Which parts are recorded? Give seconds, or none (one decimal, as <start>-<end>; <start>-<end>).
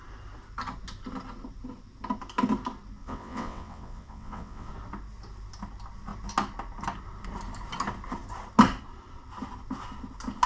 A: 0.0-3.0; 4.7-10.5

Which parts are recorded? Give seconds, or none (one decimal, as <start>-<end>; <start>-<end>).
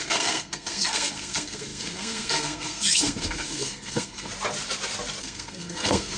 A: 4.3-5.2